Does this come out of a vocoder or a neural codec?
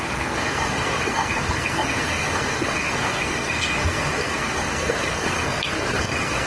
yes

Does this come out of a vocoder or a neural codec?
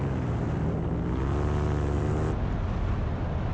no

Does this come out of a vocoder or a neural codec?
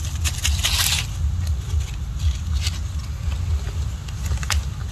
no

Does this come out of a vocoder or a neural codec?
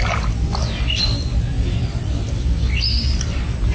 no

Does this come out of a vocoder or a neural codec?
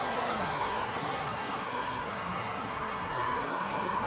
yes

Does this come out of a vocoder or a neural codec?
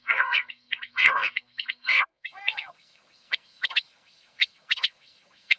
yes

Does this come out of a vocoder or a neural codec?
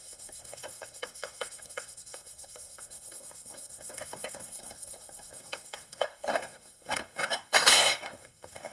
yes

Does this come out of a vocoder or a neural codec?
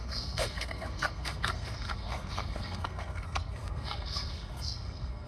yes